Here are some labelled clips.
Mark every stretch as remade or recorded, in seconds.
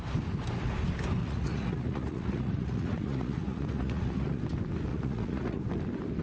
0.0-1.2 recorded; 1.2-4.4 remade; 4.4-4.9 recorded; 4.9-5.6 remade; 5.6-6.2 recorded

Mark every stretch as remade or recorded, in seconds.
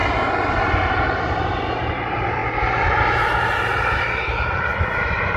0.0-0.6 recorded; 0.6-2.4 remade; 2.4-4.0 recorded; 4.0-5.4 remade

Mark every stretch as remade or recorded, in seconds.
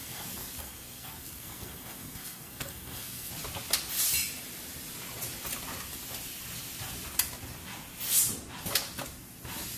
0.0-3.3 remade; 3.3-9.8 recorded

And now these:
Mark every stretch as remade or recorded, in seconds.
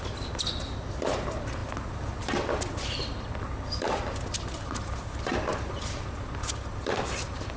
0.0-7.6 recorded